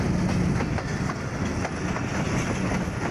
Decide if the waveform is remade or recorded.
remade